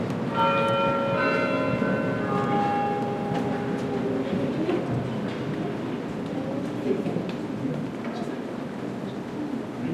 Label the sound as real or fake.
real